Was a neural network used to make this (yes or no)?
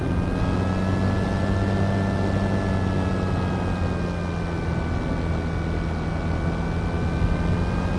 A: no